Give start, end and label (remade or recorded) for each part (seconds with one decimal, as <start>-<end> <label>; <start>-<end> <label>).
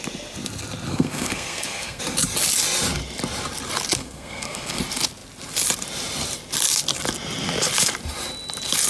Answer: 0.0-0.9 recorded; 0.9-2.0 remade; 2.0-4.0 recorded; 4.0-4.8 remade; 4.8-8.9 recorded